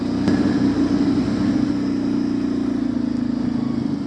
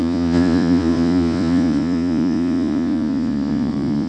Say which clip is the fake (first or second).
second